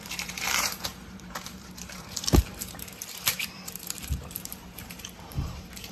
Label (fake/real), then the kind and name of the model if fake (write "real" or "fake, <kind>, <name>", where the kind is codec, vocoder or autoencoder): fake, vocoder, BigVGAN v2